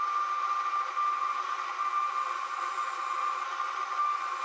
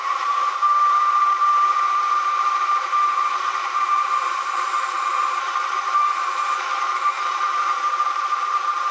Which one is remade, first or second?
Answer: second